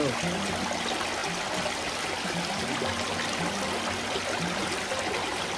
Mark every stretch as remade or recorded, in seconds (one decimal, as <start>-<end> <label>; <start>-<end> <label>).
0.0-5.6 recorded